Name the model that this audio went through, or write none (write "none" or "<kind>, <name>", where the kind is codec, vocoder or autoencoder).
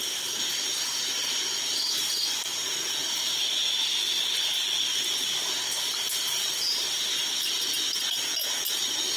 none